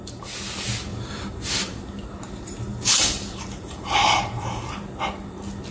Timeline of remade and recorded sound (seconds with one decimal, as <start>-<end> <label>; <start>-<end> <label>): 0.0-0.9 recorded; 0.9-2.1 remade; 2.1-2.7 recorded; 2.7-4.7 remade; 4.7-5.7 recorded